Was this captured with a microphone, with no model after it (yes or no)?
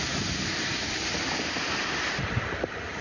no